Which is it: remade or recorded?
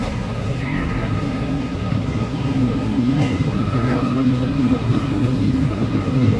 remade